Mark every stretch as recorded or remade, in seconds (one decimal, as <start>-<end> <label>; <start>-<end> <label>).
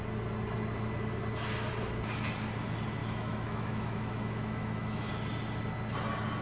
0.0-3.0 recorded; 3.0-5.1 remade; 5.1-6.4 recorded